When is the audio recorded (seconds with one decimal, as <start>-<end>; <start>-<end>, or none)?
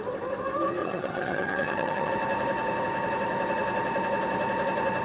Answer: 0.0-0.8; 2.1-5.0